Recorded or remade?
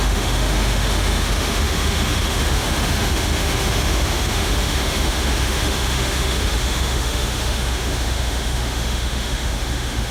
remade